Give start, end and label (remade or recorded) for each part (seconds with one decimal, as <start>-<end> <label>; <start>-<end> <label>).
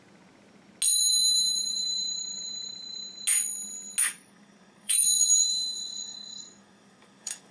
0.0-4.0 recorded; 4.0-7.5 remade